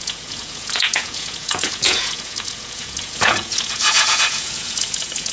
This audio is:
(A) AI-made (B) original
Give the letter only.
A